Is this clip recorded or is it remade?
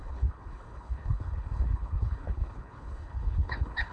remade